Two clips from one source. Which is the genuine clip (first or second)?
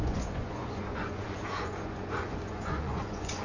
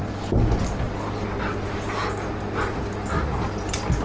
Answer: second